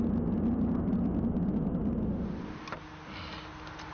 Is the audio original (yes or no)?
yes